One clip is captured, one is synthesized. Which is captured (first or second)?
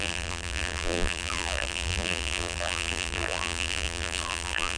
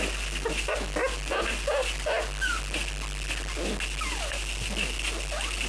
second